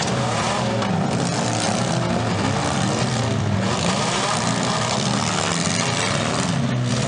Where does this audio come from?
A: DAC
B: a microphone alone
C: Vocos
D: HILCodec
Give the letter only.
B